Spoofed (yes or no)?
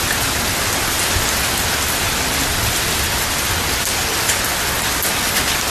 no